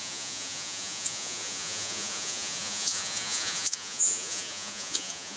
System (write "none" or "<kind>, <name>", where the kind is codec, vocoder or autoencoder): vocoder, Vocos